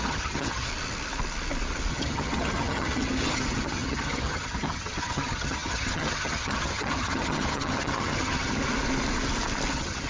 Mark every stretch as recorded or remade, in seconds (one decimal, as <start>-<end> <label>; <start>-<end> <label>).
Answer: 0.0-0.7 remade; 0.7-1.9 recorded; 1.9-8.6 remade; 8.6-9.7 recorded; 9.7-10.1 remade